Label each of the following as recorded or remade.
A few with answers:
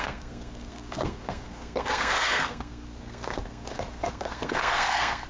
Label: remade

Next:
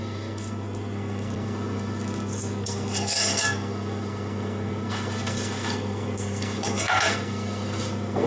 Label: remade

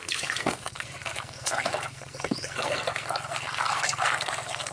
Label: remade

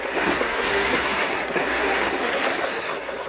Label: remade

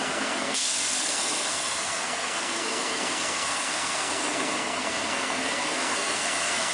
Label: remade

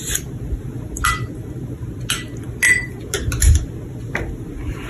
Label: recorded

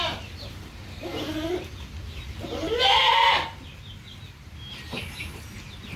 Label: recorded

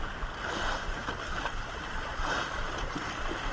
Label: recorded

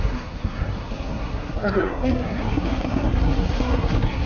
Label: remade